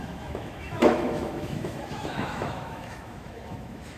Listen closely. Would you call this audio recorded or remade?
remade